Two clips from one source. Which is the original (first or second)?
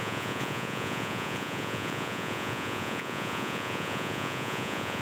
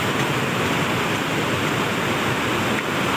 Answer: second